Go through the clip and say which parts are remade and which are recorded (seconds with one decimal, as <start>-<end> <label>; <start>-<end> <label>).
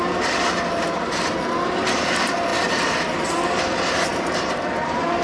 0.0-5.2 recorded